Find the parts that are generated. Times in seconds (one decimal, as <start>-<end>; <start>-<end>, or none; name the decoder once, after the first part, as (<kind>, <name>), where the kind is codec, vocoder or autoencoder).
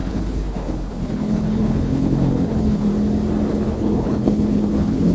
0.0-2.9 (codec, HILCodec); 3.5-5.1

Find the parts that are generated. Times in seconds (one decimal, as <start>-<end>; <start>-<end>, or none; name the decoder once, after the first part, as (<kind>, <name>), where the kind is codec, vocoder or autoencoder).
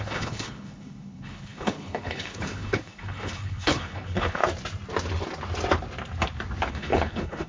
0.0-4.4 (codec, HILCodec); 6.7-7.5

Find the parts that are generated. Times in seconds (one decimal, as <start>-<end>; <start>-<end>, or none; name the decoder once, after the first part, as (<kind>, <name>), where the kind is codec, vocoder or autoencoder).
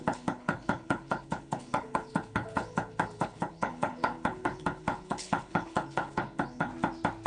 0.0-6.7 (codec, HILCodec)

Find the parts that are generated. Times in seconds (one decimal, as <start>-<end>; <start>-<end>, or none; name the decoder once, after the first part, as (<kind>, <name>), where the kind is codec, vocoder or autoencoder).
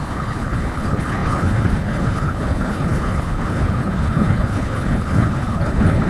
0.0-6.1 (codec, HILCodec)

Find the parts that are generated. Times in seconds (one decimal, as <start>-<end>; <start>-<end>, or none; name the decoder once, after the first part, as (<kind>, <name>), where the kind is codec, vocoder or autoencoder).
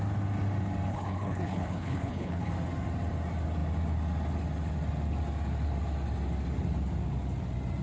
0.9-2.5 (codec, HILCodec)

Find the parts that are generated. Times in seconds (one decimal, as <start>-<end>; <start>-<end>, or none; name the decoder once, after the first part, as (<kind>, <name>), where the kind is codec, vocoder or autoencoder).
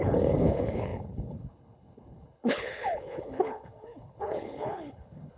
0.0-5.4 (codec, HILCodec)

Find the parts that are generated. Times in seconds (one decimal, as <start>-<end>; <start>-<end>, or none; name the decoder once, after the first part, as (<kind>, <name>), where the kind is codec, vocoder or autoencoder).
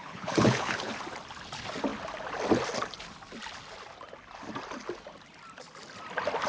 0.0-0.9 (codec, HILCodec)